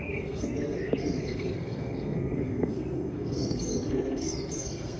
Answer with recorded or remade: remade